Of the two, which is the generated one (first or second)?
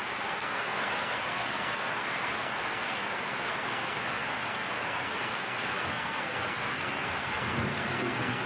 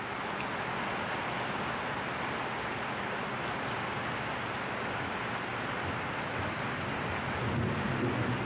first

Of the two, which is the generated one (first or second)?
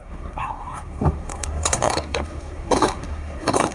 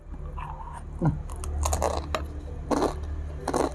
first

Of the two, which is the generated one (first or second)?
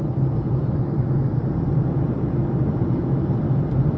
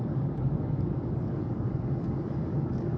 second